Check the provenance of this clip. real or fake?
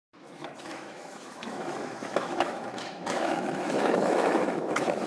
fake